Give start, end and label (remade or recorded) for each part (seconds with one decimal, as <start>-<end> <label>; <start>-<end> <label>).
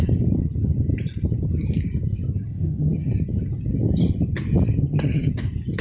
0.0-2.5 recorded; 2.5-3.1 remade; 3.1-4.8 recorded; 4.8-5.3 remade; 5.3-5.8 recorded